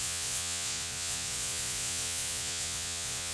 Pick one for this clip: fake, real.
fake